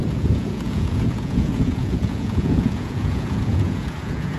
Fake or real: fake